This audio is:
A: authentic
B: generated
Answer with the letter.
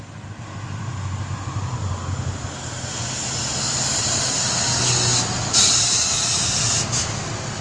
A